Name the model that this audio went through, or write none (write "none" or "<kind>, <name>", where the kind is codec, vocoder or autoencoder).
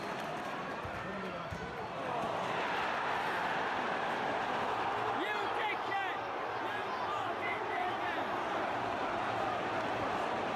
none